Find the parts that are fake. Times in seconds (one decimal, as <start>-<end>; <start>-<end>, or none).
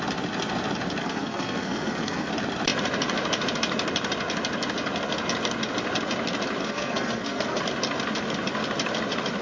1.0-2.3; 6.6-7.6